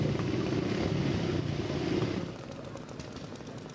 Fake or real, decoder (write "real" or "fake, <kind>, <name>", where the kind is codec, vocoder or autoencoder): real